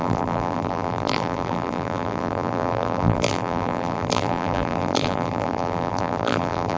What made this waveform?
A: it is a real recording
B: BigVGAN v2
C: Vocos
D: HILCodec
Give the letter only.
B